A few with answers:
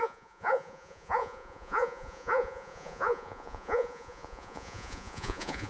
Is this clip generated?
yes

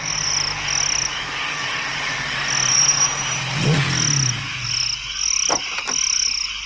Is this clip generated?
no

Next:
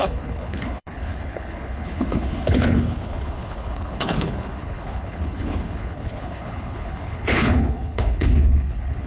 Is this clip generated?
yes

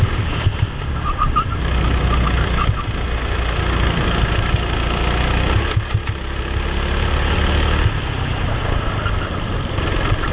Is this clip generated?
no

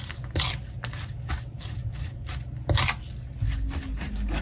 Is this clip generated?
no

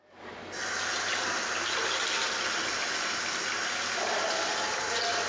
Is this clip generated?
no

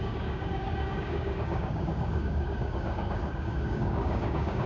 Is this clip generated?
yes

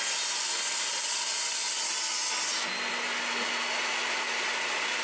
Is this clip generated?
no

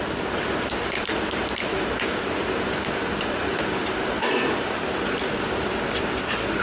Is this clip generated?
yes